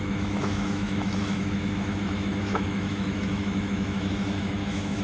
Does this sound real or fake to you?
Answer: fake